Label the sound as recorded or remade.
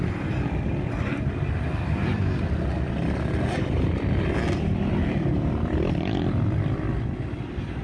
recorded